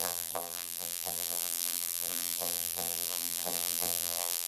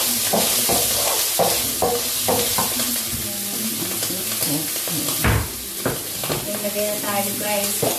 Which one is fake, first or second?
first